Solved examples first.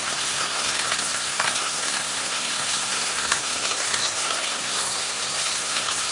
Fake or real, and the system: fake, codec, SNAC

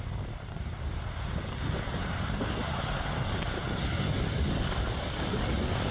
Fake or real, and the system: real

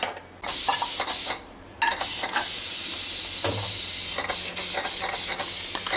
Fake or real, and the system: real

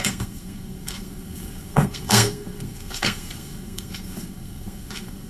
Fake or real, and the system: fake, codec, SNAC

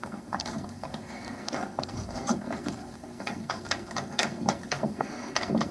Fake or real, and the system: fake, codec, SNAC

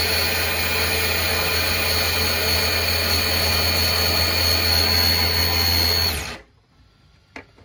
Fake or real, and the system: real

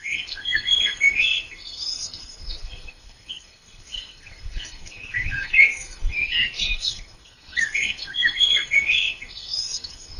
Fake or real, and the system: fake, codec, SNAC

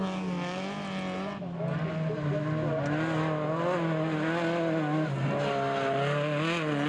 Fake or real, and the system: real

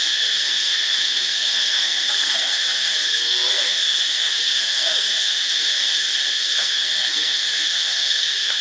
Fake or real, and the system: fake, codec, SNAC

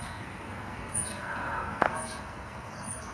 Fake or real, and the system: fake, codec, SNAC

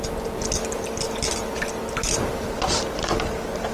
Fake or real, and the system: real